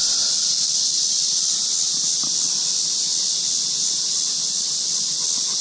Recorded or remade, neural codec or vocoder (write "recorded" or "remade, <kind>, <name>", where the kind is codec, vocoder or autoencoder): recorded